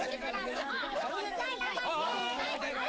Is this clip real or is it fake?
fake